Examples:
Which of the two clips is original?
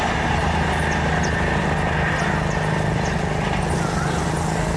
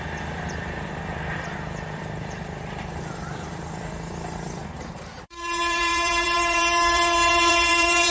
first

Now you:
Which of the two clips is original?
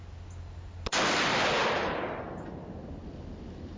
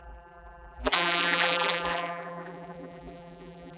first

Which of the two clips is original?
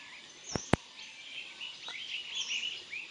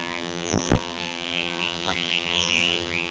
first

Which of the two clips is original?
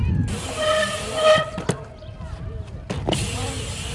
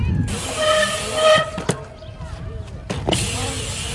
second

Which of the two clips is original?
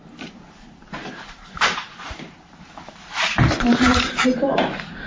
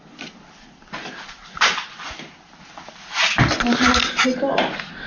second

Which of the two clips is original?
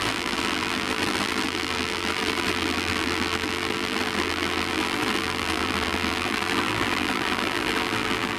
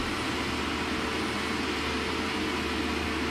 second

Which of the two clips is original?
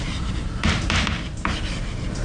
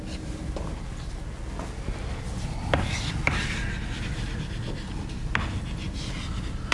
second